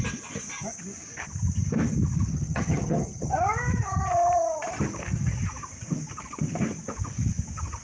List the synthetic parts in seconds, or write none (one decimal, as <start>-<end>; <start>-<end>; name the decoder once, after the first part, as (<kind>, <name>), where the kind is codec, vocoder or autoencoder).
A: 2.3-3.3 (vocoder, HiFi-GAN)